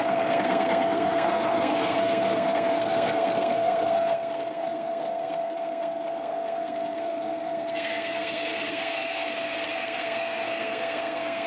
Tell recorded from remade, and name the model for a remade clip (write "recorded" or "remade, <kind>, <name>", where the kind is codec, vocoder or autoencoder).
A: remade, codec, SNAC